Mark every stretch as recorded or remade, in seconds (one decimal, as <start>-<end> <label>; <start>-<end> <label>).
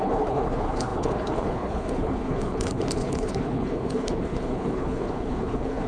0.0-5.9 remade